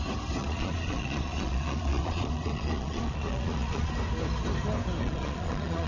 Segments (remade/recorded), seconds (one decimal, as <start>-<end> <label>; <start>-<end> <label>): 0.0-0.4 recorded; 0.4-3.9 remade; 3.9-5.0 recorded; 5.0-5.9 remade